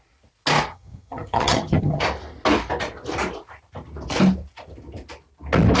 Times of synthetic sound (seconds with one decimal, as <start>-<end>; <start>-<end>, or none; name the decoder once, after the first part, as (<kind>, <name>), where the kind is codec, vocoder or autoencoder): 0.7-2.0 (vocoder, HiFi-GAN)